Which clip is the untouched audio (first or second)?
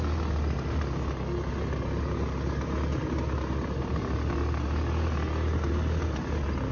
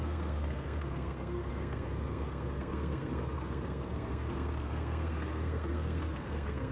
first